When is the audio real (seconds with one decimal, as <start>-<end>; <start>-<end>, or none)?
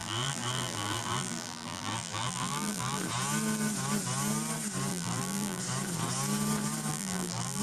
3.0-4.9; 5.6-6.9